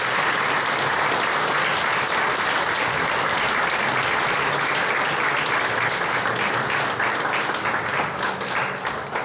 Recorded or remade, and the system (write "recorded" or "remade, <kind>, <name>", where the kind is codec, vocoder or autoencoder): recorded